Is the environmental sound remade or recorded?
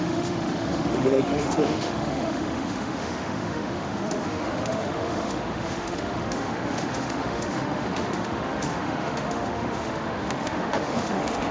remade